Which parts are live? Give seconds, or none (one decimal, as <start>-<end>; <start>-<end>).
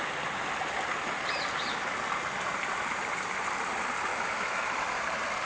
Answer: 0.0-4.1; 5.0-5.5